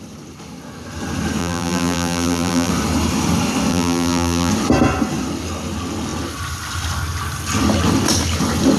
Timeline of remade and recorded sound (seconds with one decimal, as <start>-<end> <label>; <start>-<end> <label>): 0.0-1.4 recorded; 1.4-2.7 remade; 2.7-3.7 recorded; 3.7-4.5 remade; 4.5-8.8 recorded